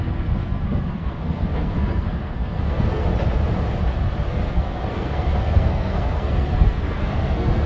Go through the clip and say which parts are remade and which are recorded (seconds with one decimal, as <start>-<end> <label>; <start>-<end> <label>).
0.0-3.1 remade; 3.1-4.3 recorded; 4.3-7.7 remade